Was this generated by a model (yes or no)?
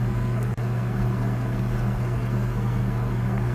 yes